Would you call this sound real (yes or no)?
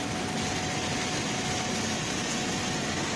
yes